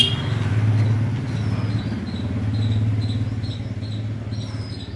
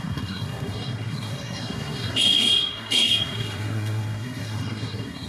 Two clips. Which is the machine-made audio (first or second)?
second